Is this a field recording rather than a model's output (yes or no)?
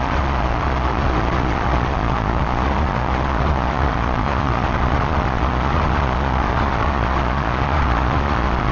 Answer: no